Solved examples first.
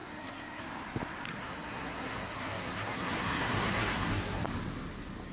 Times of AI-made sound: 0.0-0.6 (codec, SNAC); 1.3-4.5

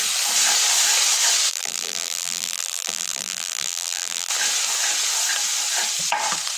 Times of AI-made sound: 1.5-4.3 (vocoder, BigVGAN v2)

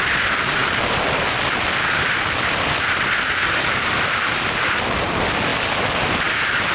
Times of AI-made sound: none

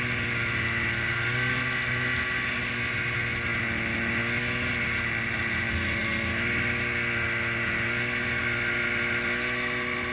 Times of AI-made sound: none

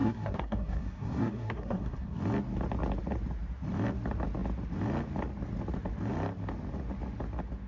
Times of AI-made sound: 0.0-2.2 (codec, SNAC)

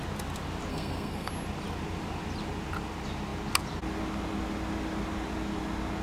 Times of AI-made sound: 0.7-1.3 (codec, SNAC)